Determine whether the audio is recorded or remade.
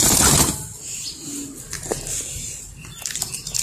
recorded